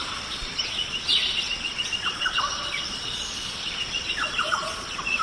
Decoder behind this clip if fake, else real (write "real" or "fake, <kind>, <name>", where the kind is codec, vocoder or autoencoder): fake, vocoder, Vocos